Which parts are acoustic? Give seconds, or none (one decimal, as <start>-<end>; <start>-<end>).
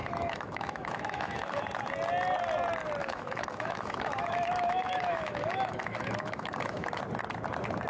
1.6-3.0; 7.0-7.9